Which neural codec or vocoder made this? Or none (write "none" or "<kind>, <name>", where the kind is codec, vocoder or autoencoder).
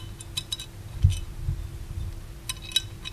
none